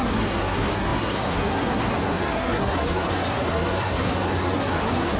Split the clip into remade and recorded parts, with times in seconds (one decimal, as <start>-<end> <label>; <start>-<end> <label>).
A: 0.0-5.2 remade